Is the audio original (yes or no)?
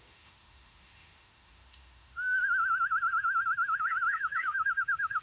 no